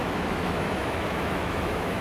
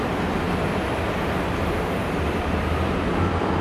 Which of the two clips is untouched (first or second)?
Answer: second